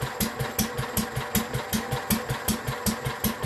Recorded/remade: recorded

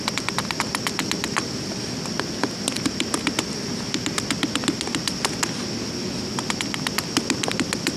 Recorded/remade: recorded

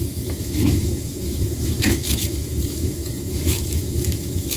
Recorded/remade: remade